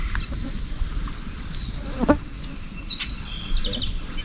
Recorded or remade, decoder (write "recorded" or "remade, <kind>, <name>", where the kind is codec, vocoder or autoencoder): recorded